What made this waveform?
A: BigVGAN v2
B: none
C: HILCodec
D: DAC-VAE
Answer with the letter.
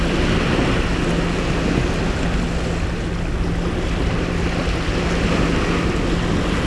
B